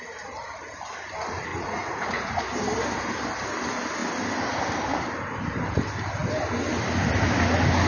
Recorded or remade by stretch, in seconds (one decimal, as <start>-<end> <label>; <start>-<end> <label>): 0.0-1.5 recorded; 1.5-2.4 remade; 2.4-7.9 recorded